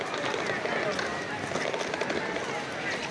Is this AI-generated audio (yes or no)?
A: no